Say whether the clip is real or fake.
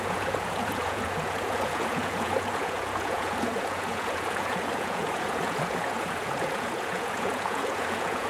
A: fake